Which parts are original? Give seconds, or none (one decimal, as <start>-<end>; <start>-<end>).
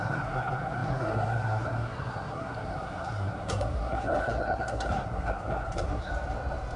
6.1-6.8